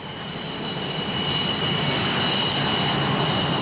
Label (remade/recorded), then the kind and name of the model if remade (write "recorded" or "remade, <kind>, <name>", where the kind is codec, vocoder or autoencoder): recorded